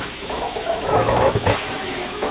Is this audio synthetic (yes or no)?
yes